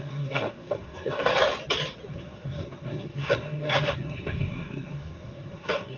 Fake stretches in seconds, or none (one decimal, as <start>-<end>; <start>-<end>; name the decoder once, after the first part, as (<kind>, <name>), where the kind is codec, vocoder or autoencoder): 0.0-1.3 (codec, SNAC); 2.1-6.0